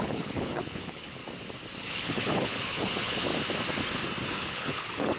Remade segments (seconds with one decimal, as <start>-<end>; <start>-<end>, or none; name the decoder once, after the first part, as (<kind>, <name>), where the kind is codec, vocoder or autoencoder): 0.0-1.2 (codec, HILCodec); 1.8-3.3; 4.3-5.2